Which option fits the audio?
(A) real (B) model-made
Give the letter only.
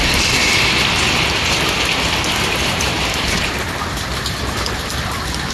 A